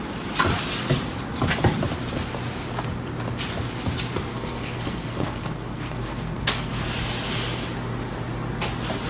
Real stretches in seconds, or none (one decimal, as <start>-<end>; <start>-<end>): 0.0-4.3; 6.7-9.1